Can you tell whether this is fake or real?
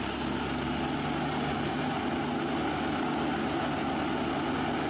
real